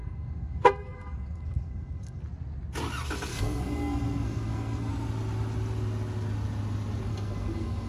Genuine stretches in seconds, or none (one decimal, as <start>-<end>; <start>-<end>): 2.2-3.3; 4.9-7.1